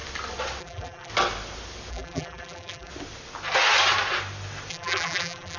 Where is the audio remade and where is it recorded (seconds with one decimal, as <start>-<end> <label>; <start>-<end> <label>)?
0.0-0.6 recorded; 0.6-1.1 remade; 1.1-1.9 recorded; 1.9-2.9 remade; 2.9-4.7 recorded; 4.7-5.6 remade

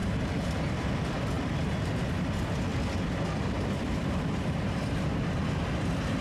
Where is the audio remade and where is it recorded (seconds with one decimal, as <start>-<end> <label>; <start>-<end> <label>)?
0.0-0.9 remade; 0.9-2.7 recorded; 2.7-5.5 remade; 5.5-6.2 recorded

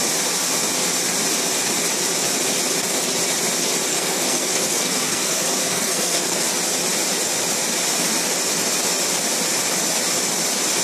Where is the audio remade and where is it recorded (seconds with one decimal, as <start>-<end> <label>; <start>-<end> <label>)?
0.0-3.9 recorded; 3.9-6.5 remade; 6.5-10.8 recorded

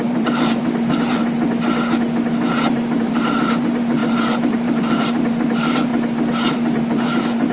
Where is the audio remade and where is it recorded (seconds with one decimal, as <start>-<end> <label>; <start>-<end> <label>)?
0.0-1.2 remade; 1.2-3.0 recorded; 3.0-5.9 remade; 5.9-6.5 recorded; 6.5-7.5 remade